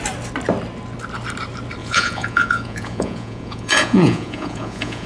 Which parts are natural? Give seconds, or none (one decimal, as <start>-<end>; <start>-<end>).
0.0-1.8